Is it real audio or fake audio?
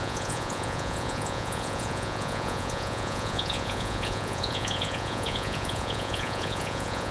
fake